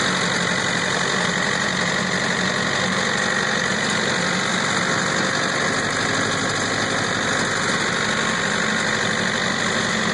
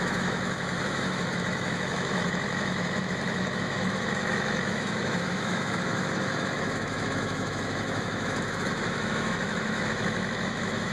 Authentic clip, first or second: first